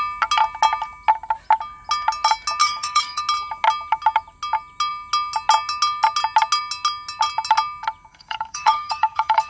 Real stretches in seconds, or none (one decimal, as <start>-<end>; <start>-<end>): 0.0-2.6; 3.2-8.1